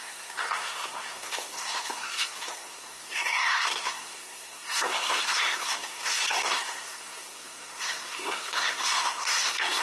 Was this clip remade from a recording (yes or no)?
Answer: yes